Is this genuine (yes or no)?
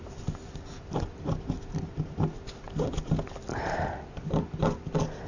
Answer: yes